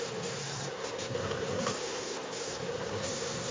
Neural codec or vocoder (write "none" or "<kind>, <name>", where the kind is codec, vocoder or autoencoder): codec, SNAC